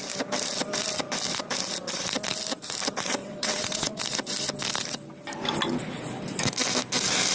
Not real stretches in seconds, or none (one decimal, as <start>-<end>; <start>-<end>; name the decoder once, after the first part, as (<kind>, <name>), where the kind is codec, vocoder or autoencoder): 3.2-4.0 (vocoder, WaveNeXt)